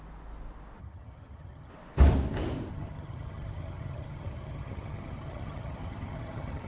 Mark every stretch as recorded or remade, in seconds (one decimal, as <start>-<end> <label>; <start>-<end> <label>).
0.0-0.8 recorded; 0.8-1.7 remade; 1.7-2.7 recorded; 2.7-6.7 remade